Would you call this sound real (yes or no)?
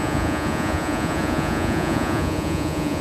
no